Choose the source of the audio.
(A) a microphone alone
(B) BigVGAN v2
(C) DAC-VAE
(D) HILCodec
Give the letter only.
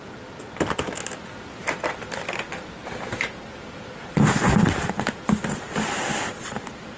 A